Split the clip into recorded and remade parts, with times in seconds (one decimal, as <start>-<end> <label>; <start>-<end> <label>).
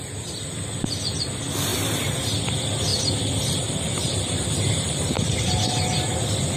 0.0-2.9 recorded; 2.9-5.3 remade; 5.3-6.6 recorded